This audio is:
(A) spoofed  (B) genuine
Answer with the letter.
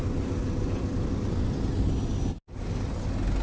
B